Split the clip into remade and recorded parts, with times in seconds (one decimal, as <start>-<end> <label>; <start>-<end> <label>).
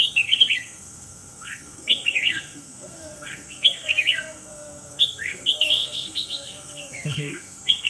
0.0-7.9 remade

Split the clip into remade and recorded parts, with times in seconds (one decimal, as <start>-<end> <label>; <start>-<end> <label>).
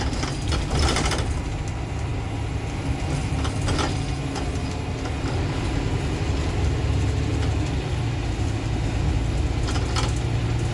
0.0-10.7 recorded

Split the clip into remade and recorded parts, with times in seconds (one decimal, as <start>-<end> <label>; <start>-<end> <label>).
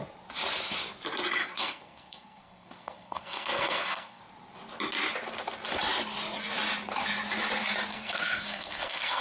0.0-1.4 recorded; 1.4-4.2 remade; 4.2-7.9 recorded; 7.9-9.2 remade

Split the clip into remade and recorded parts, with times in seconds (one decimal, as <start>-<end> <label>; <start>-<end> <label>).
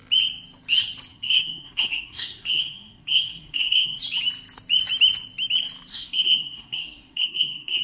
0.0-1.1 recorded; 1.1-4.0 remade; 4.0-5.9 recorded; 5.9-7.8 remade